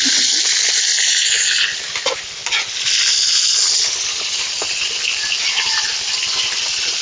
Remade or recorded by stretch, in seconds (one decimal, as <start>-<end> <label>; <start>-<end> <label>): 0.0-7.0 recorded